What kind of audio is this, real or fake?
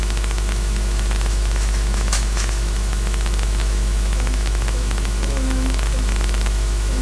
fake